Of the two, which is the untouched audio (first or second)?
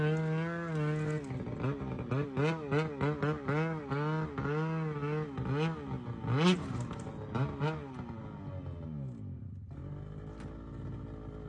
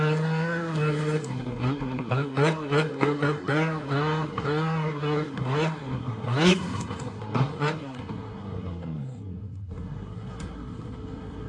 first